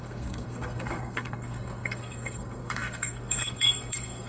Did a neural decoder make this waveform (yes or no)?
yes